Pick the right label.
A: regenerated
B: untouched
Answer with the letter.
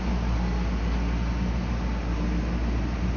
B